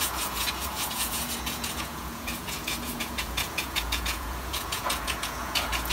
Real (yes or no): no